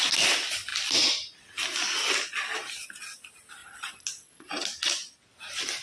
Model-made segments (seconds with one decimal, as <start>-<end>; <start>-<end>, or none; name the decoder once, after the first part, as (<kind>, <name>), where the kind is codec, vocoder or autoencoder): 3.6-4.6 (vocoder, Vocos)